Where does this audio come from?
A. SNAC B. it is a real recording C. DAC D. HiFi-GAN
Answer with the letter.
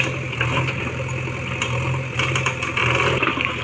B